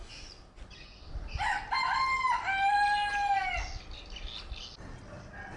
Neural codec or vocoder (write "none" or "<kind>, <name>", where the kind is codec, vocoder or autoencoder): none